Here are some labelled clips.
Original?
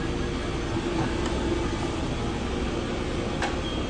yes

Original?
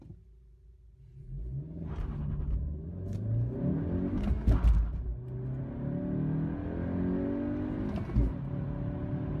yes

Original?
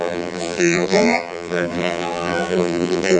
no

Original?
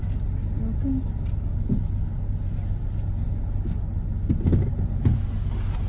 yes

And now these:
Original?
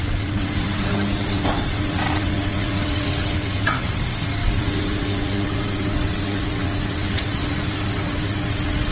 no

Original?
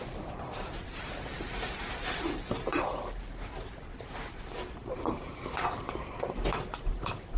no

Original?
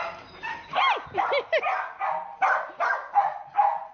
yes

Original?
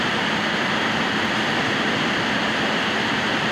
no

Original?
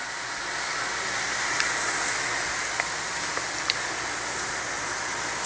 yes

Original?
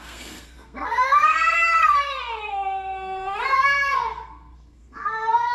no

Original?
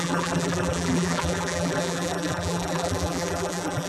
no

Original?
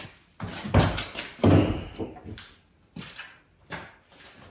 yes